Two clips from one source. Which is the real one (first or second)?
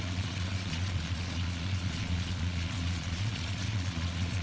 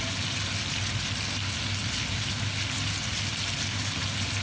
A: second